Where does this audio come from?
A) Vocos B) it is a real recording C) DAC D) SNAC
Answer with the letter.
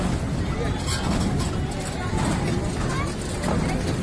B